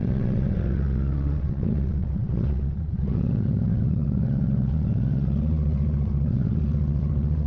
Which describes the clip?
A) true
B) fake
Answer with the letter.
B